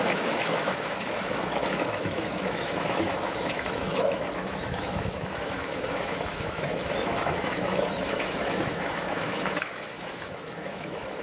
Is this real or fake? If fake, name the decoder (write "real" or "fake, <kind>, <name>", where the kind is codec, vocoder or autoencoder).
fake, autoencoder, DAC-VAE